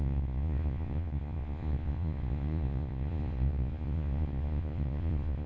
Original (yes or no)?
no